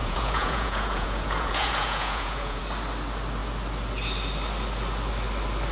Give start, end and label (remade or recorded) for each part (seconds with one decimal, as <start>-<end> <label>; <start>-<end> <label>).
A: 0.0-2.6 remade; 2.6-5.7 recorded